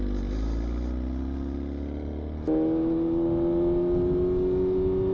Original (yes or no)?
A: yes